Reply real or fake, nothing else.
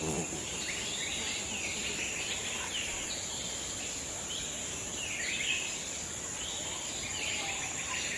real